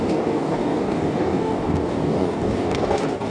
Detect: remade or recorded remade